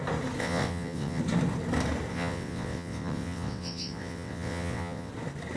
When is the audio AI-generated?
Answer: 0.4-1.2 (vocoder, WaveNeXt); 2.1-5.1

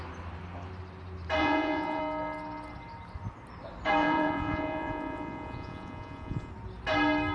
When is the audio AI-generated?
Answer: 1.4-2.0 (vocoder, Vocos); 4.0-6.5

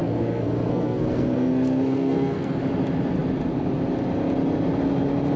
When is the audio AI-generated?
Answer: 0.0-2.6 (codec, SNAC)

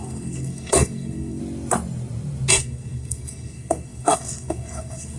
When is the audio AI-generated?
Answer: 0.0-1.4 (codec, SNAC); 2.5-5.2